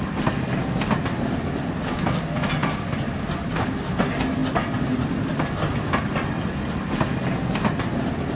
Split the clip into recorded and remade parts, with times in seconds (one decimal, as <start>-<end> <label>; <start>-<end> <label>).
0.0-8.4 recorded